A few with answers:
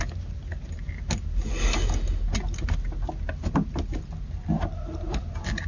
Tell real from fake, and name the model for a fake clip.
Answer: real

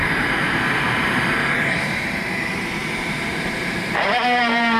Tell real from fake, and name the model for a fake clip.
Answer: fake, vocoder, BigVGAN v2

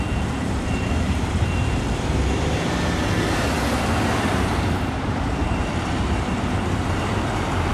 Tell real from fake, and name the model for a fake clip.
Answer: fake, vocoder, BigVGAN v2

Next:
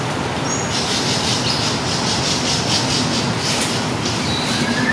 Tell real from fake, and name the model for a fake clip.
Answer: real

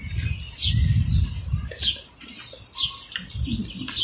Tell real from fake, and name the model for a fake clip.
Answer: real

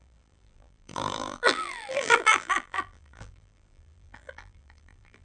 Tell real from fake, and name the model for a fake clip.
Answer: fake, vocoder, BigVGAN v2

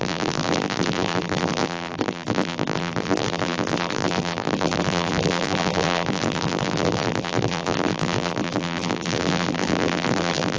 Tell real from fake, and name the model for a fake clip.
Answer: fake, vocoder, BigVGAN v2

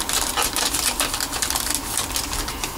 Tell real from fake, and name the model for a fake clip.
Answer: real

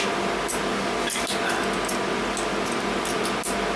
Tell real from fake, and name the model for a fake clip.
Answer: real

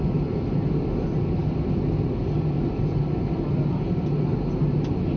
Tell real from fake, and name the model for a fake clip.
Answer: real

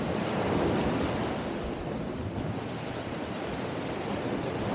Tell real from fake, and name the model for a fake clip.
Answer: fake, vocoder, BigVGAN v2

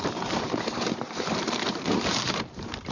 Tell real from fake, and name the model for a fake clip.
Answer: fake, vocoder, BigVGAN v2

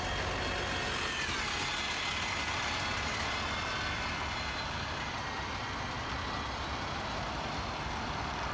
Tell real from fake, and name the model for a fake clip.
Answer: real